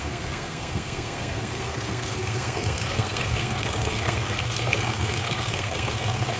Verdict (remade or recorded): remade